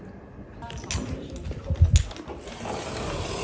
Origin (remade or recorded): recorded